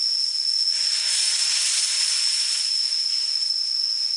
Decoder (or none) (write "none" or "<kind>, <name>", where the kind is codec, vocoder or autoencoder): none